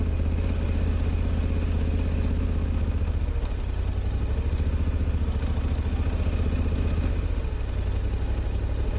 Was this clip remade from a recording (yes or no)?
no